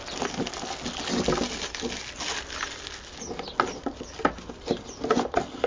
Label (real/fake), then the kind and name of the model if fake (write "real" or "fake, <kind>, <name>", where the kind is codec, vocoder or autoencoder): real